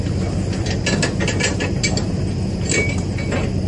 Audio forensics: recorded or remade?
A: recorded